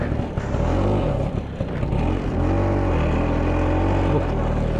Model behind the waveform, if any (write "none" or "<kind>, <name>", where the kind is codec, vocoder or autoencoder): none